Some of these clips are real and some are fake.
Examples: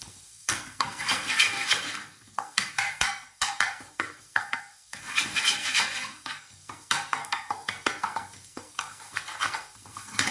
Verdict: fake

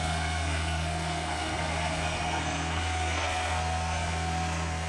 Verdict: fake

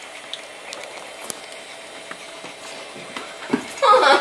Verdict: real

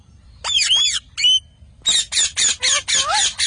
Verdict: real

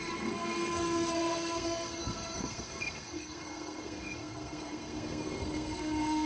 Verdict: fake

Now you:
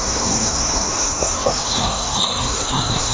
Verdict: fake